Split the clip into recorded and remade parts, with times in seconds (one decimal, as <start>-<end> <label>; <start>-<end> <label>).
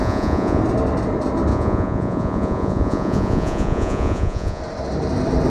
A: 0.0-0.6 remade; 0.6-1.5 recorded; 1.5-4.6 remade; 4.6-5.5 recorded